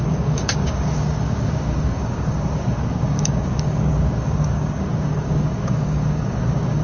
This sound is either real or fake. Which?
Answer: fake